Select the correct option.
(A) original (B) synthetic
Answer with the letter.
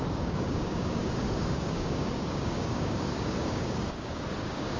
B